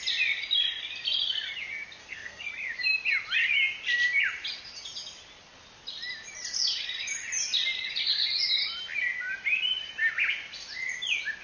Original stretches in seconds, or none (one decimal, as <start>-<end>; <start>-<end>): 0.0-2.0; 2.5-11.4